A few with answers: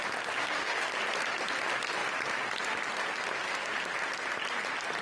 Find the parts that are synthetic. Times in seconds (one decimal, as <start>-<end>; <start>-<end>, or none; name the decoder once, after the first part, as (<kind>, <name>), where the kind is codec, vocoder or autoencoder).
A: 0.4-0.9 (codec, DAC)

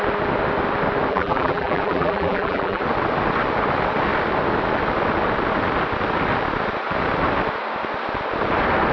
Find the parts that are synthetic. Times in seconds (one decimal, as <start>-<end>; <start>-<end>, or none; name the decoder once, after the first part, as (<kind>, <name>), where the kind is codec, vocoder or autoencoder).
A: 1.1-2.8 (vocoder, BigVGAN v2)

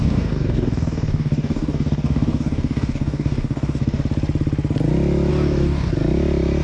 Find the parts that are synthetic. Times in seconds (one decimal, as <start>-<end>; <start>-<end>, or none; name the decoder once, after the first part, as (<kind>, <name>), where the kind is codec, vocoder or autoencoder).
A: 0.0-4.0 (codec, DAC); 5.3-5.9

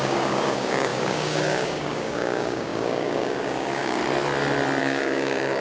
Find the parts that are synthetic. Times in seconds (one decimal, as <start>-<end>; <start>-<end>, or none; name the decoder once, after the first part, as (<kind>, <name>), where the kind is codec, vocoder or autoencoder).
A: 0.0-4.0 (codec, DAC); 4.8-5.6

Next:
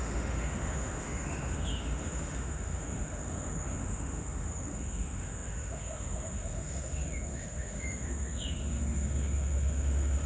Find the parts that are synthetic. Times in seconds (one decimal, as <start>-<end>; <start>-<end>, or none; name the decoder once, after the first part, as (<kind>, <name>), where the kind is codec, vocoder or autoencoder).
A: 0.0-10.3 (autoencoder, DAC-VAE)